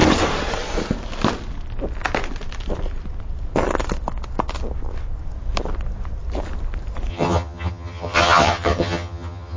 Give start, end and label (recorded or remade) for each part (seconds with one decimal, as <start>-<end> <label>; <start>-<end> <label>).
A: 0.0-7.1 recorded; 7.1-9.6 remade